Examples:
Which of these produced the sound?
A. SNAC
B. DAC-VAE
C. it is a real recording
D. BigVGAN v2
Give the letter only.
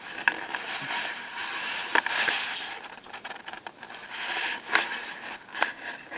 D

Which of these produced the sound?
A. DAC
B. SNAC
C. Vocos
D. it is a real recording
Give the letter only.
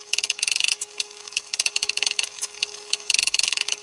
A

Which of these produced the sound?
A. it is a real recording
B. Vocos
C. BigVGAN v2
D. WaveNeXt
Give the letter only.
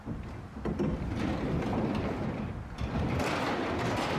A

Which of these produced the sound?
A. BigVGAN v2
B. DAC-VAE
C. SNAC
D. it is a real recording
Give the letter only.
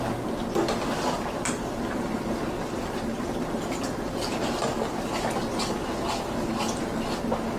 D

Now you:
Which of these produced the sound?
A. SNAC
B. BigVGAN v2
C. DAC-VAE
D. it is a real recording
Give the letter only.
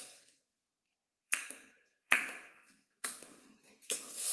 A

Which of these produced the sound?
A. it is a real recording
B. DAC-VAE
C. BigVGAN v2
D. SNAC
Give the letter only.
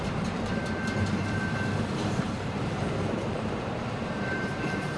C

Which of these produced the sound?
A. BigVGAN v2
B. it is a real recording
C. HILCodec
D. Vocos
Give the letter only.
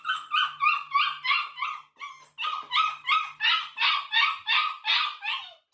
B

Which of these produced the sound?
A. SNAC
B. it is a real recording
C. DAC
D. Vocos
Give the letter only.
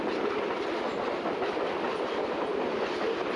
B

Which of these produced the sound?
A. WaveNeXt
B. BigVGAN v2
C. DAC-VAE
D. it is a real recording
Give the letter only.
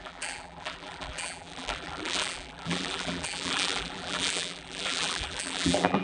B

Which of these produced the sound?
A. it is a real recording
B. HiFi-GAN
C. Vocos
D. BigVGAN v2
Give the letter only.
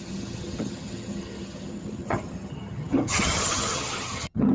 B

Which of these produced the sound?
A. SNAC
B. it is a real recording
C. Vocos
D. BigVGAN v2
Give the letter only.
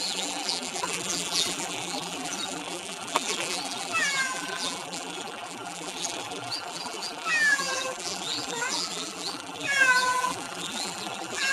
D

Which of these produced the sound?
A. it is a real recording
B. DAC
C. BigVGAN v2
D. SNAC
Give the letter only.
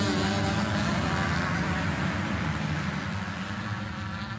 A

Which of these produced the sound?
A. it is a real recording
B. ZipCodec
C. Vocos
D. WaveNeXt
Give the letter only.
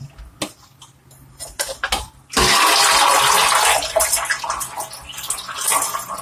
A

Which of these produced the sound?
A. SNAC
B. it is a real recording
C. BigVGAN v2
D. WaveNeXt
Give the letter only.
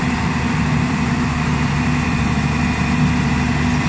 C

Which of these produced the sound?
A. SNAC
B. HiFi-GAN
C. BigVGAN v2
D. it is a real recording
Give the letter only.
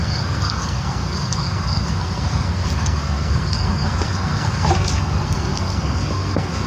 A